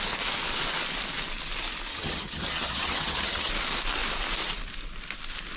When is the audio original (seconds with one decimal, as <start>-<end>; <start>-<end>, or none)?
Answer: 0.0-1.9; 3.5-5.6

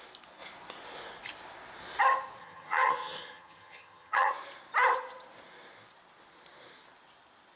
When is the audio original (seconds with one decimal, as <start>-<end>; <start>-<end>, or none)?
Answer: 0.0-2.4; 4.3-7.6

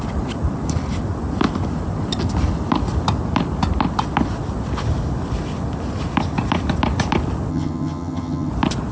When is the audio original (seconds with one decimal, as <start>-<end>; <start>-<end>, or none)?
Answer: 0.0-7.5; 8.5-8.9

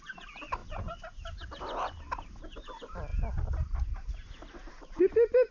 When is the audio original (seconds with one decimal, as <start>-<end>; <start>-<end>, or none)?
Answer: 0.0-5.5

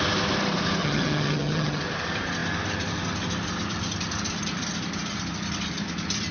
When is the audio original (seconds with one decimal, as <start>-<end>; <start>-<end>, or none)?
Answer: 0.0-0.8; 1.8-6.3

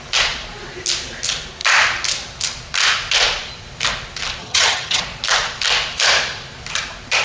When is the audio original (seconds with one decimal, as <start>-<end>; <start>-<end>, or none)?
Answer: 0.0-4.4; 5.0-7.2

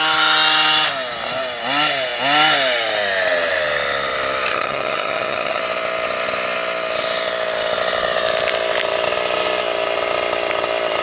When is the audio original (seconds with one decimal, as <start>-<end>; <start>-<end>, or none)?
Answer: 0.0-4.5; 5.6-11.0

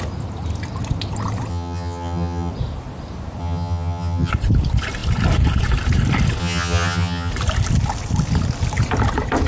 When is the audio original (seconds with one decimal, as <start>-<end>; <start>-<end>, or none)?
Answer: 0.0-1.5; 2.5-3.4; 4.3-6.4; 7.3-9.5